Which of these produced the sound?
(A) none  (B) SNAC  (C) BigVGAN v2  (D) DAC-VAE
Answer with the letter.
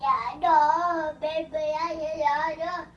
A